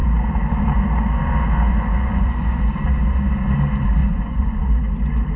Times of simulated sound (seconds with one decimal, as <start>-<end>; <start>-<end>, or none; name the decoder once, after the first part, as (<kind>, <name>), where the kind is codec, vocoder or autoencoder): 1.7-2.6 (vocoder, Vocos); 4.0-4.6